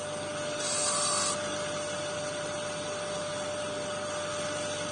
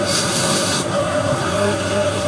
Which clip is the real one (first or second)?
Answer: first